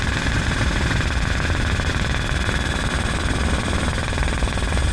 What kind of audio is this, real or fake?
real